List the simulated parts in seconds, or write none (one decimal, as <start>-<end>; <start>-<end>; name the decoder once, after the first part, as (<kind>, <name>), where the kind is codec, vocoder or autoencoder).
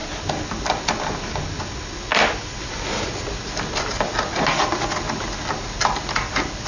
none